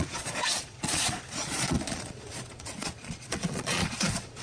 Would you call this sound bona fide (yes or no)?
no